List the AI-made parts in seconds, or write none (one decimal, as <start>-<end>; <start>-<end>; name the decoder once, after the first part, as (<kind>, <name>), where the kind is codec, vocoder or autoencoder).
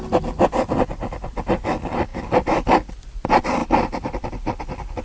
3.6-4.6 (vocoder, BigVGAN v2)